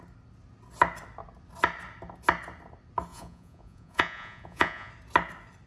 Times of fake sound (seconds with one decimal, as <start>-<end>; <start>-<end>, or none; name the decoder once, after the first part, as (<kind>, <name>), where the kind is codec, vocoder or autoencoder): 3.1-4.9 (vocoder, Vocos)